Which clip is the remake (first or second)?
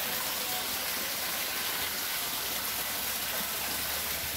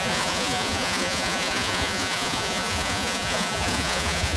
second